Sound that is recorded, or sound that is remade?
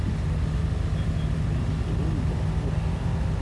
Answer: recorded